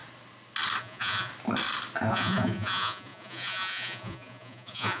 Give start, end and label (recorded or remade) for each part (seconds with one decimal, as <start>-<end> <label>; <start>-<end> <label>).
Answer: 0.0-0.8 recorded; 0.8-1.3 remade; 1.3-2.1 recorded; 2.1-5.0 remade

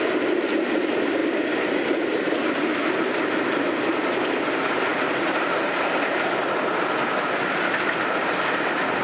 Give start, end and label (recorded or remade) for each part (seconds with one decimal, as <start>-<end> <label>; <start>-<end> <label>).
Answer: 0.0-9.0 recorded

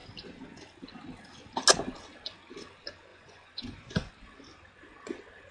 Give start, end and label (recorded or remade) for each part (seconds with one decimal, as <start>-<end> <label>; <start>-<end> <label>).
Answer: 0.0-3.1 recorded; 3.1-4.1 remade; 4.1-5.5 recorded

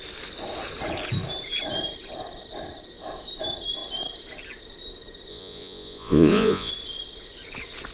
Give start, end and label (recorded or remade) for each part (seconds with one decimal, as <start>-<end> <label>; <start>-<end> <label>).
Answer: 0.0-5.3 recorded; 5.3-6.7 remade; 6.7-7.9 recorded